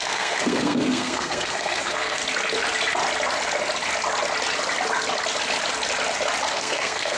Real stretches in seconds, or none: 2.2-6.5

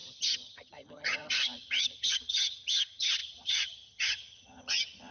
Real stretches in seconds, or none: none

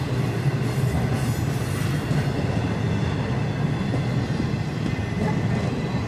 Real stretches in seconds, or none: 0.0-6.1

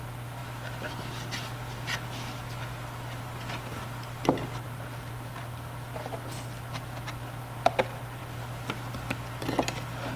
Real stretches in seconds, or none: 0.0-10.2

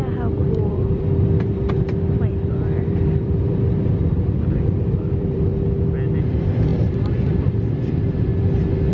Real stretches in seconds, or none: 5.5-6.3; 6.7-7.4; 8.3-8.9

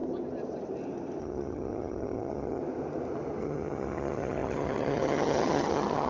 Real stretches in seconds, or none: 0.0-1.2; 2.6-3.4